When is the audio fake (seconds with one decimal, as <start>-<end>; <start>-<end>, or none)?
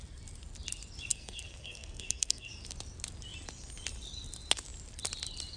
1.1-2.5